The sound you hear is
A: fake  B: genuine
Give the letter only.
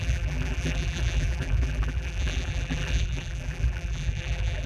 A